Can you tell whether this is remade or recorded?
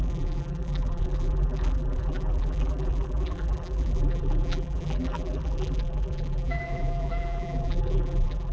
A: remade